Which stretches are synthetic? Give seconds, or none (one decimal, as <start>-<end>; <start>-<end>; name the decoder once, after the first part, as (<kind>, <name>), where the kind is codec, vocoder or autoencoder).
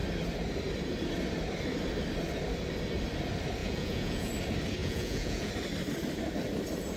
3.6-4.3 (vocoder, Vocos); 4.8-5.5